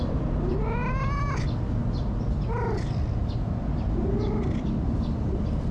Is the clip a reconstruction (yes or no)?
no